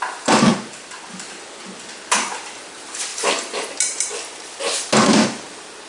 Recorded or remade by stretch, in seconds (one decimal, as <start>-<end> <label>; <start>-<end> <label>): 0.0-0.5 recorded; 0.5-1.1 remade; 1.1-3.1 recorded; 3.1-3.7 remade; 3.7-5.9 recorded